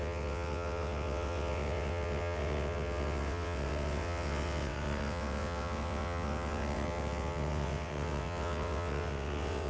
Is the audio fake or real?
fake